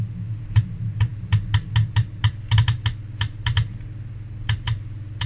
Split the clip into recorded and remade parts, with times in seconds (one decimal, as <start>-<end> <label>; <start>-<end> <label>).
0.0-5.3 recorded